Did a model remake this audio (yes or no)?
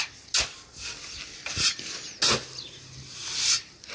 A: no